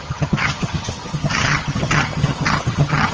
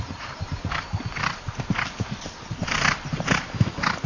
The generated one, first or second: first